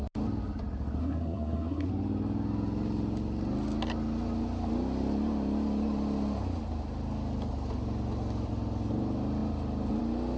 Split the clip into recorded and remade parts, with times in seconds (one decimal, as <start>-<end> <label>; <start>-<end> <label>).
0.0-1.0 recorded; 1.0-1.9 remade; 1.9-10.4 recorded